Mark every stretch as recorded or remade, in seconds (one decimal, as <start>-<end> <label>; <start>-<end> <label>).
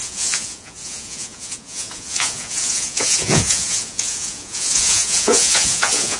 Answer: 0.0-6.2 remade